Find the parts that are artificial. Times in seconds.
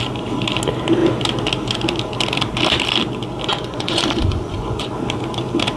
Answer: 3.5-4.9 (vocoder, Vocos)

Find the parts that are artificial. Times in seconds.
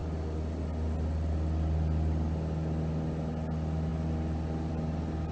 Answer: none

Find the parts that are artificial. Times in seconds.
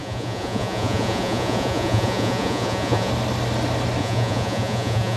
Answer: 0.0-3.1 (vocoder, Vocos); 4.0-5.2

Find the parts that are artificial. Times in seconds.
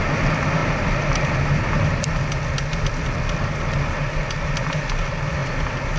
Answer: none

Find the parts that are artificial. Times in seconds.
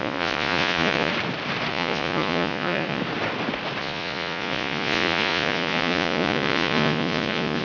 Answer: 0.0-1.1 (vocoder, Vocos); 1.7-3.0; 3.8-7.6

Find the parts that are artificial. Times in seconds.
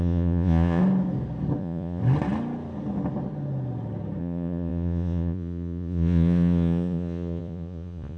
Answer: 0.0-0.8 (vocoder, Vocos); 1.6-2.0; 4.2-8.2